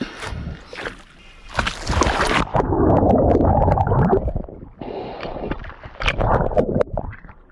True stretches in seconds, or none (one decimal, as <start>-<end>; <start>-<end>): 0.0-2.5; 3.5-7.5